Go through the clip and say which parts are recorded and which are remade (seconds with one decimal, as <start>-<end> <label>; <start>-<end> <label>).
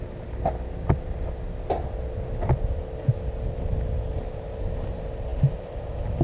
0.0-6.2 recorded